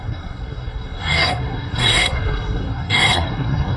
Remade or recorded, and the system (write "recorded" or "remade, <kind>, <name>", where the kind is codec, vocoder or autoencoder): remade, codec, SNAC